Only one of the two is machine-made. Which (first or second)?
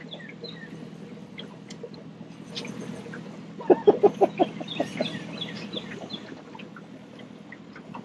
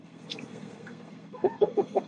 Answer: second